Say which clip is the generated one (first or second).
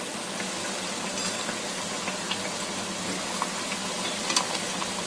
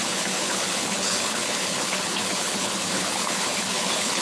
second